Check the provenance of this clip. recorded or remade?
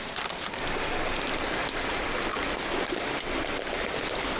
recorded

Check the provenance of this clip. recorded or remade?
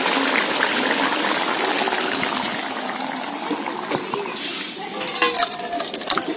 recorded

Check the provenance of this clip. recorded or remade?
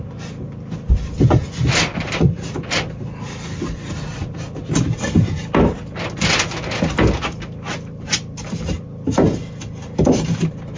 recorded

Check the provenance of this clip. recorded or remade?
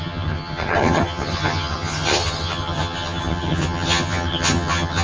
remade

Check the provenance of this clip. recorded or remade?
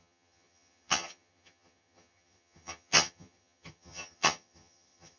remade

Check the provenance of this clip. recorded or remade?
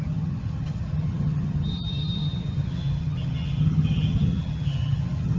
remade